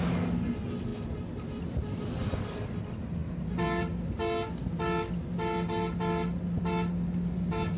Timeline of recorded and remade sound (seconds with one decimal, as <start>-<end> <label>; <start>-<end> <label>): 0.0-7.8 recorded